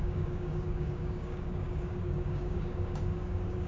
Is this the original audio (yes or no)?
no